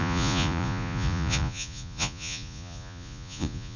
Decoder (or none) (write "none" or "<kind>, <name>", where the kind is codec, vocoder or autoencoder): vocoder, Vocos